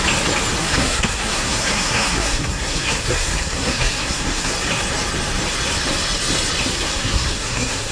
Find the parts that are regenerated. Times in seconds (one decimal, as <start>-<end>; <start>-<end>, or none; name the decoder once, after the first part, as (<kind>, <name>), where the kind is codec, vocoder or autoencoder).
0.6-4.5 (codec, SNAC); 6.7-7.9

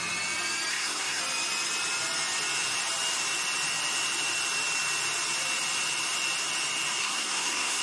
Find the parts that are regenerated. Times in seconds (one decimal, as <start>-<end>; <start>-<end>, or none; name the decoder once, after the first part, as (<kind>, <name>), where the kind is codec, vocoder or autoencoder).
0.7-1.2 (codec, SNAC); 7.0-7.8

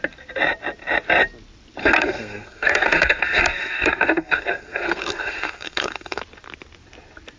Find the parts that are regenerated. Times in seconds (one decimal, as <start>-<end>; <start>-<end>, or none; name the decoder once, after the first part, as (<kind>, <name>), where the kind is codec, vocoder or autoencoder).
1.8-6.2 (codec, SNAC)

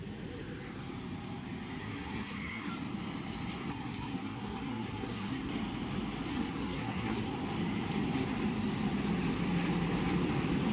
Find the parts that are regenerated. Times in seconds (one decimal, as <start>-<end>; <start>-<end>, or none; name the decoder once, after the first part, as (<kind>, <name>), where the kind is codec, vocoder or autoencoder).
1.8-2.7 (codec, SNAC); 3.7-5.5; 6.3-7.2

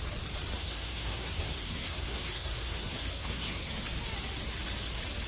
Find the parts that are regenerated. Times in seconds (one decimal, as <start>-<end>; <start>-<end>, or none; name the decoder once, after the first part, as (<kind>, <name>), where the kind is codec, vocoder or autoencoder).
0.6-3.8 (codec, SNAC)

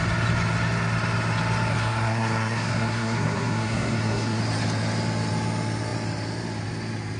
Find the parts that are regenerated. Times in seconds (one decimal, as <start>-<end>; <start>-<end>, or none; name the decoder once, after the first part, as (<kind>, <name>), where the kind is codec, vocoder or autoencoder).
1.7-4.4 (codec, SNAC)

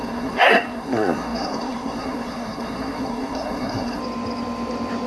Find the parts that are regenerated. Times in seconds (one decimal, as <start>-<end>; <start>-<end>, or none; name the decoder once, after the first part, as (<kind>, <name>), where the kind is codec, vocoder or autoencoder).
0.0-4.0 (codec, SNAC)